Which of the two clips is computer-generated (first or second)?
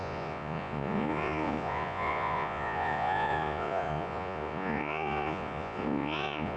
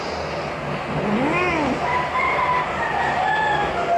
first